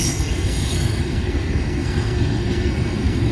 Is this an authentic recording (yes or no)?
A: no